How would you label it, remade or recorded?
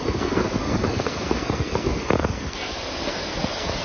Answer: remade